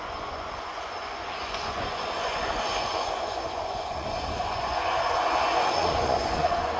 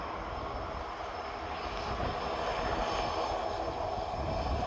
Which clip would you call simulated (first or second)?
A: first